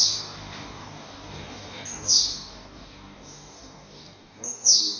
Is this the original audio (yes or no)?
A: no